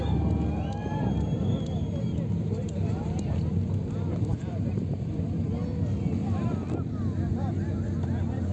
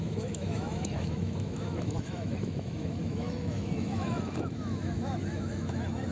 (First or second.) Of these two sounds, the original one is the first